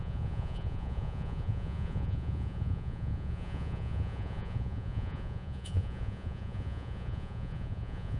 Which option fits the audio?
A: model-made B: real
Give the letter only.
A